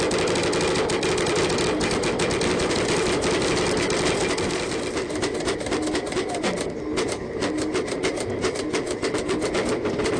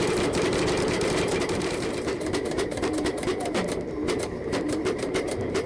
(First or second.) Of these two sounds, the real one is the first